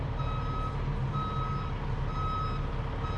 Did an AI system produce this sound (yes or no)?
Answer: no